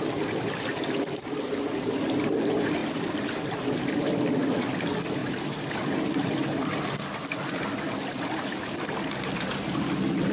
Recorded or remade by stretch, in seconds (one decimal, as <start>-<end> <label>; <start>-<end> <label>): 0.0-10.3 recorded